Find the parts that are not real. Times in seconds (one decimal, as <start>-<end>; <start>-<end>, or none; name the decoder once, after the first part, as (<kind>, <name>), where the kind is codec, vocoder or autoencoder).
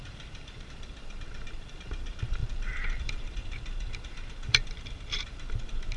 0.0-3.4 (vocoder, BigVGAN v2); 4.0-6.0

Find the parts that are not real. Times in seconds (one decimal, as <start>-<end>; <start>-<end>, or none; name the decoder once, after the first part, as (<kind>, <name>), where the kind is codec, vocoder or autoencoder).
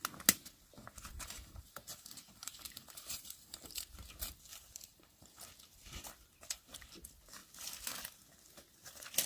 1.1-3.8 (vocoder, BigVGAN v2); 4.5-5.2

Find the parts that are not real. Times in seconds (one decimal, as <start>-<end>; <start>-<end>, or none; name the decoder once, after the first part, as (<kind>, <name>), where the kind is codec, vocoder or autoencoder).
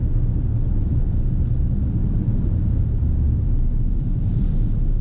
2.0-3.0 (vocoder, BigVGAN v2)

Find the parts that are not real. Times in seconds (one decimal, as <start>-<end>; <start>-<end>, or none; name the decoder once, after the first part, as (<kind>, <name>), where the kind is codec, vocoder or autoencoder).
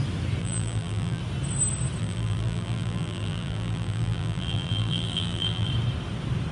0.4-1.2 (vocoder, BigVGAN v2); 2.0-5.7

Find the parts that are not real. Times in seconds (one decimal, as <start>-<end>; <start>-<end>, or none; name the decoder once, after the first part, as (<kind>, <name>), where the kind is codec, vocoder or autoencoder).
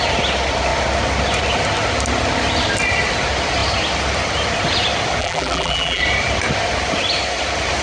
5.2-6.0 (vocoder, BigVGAN v2)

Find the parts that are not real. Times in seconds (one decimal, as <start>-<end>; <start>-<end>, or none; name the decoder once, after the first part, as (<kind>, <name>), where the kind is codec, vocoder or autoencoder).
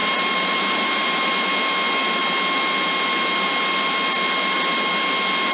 0.0-1.6 (vocoder, BigVGAN v2)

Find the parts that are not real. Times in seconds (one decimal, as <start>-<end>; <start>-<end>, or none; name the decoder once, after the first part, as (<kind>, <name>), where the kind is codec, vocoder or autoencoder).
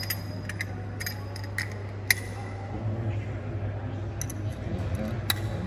4.3-5.0 (vocoder, BigVGAN v2)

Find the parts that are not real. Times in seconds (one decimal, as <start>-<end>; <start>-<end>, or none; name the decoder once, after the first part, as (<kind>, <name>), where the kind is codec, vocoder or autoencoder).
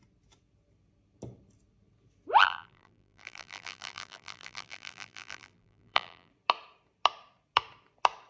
2.4-6.3 (vocoder, BigVGAN v2)